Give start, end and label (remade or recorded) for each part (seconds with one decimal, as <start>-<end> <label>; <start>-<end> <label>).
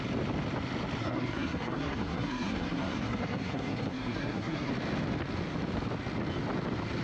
0.0-1.0 recorded; 1.0-4.7 remade; 4.7-7.0 recorded